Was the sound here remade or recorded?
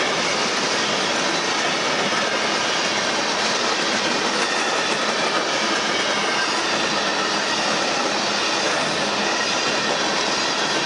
recorded